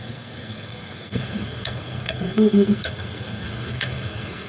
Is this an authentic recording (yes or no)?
no